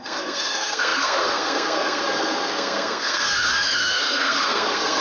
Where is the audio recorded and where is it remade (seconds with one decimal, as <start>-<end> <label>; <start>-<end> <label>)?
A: 0.0-5.0 remade